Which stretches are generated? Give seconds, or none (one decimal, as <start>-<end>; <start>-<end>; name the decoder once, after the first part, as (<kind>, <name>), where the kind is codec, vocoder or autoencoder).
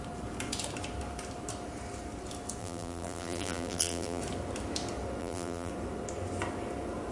2.6-4.2 (vocoder, BigVGAN v2); 5.2-5.7